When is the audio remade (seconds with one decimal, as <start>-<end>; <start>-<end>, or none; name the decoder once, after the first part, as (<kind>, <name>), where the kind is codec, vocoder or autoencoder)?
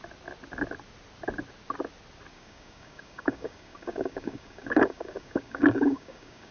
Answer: 2.3-6.5 (codec, DAC)